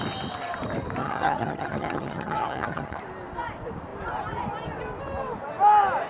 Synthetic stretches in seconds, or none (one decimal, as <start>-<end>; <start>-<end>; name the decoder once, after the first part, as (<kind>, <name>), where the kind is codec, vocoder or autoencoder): 1.0-3.0 (vocoder, HiFi-GAN)